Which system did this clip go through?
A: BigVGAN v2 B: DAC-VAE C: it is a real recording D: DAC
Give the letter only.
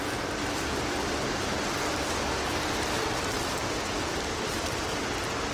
C